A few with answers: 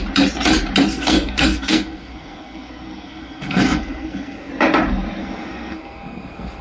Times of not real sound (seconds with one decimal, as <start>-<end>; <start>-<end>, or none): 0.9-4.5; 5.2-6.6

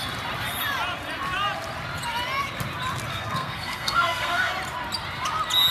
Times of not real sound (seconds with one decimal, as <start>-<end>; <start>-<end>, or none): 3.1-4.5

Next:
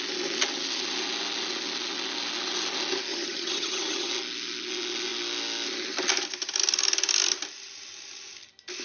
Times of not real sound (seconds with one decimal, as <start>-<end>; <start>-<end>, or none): 3.1-4.1